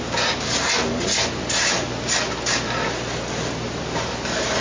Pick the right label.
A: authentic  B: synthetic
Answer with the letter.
A